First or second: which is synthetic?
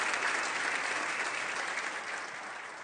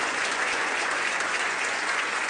second